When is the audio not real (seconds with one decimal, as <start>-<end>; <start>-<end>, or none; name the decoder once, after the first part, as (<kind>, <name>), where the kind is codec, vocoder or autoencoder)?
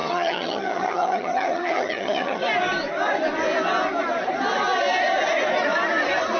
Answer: 0.0-2.4 (vocoder, HiFi-GAN)